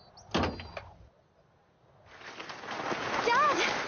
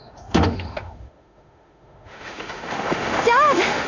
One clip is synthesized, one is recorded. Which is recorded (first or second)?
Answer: first